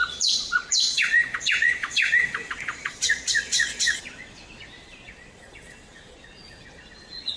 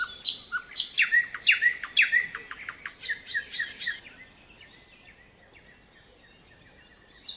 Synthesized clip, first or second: first